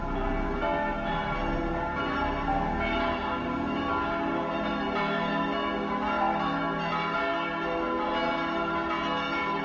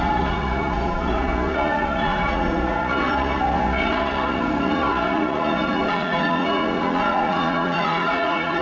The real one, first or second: first